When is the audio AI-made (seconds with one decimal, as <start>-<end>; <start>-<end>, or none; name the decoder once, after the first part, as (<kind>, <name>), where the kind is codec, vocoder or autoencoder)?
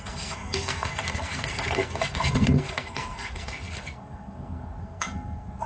0.0-5.7 (codec, SNAC)